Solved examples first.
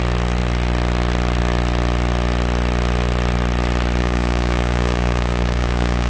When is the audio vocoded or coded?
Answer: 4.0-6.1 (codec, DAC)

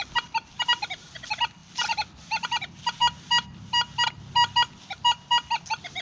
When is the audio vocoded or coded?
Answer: none

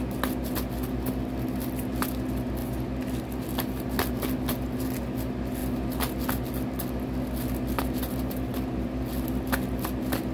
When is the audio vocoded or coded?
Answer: none

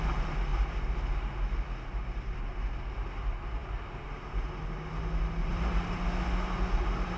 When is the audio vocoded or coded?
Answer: 0.5-1.4 (vocoder, BigVGAN v2); 5.4-6.0

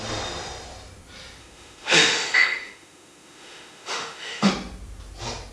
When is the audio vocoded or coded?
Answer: 1.4-4.5 (autoencoder, DAC-VAE)